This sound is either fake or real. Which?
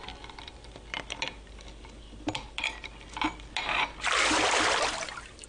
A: real